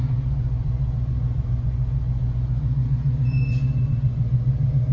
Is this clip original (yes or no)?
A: no